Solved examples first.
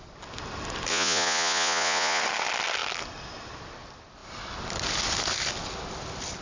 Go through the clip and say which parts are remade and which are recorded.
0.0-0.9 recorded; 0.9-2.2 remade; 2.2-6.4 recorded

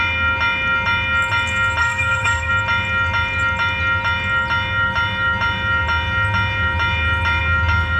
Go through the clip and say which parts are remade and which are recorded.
0.0-1.8 recorded; 1.8-2.5 remade; 2.5-8.0 recorded

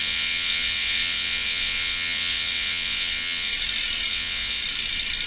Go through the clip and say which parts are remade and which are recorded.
0.0-3.5 remade; 3.5-4.1 recorded; 4.1-4.6 remade; 4.6-5.3 recorded

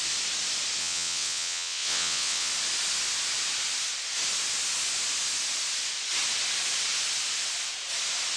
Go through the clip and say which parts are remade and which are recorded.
0.0-0.8 recorded; 0.8-2.5 remade; 2.5-8.4 recorded

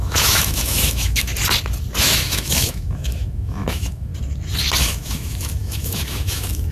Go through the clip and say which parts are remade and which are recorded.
0.0-1.3 remade; 1.3-2.0 recorded; 2.0-4.1 remade; 4.1-4.8 recorded; 4.8-6.7 remade

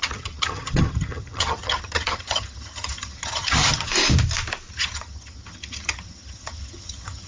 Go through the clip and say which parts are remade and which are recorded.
0.0-3.9 remade; 3.9-4.7 recorded; 4.7-7.3 remade